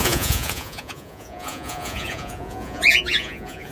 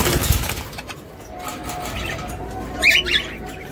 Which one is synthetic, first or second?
first